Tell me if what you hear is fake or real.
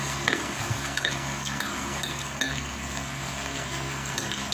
fake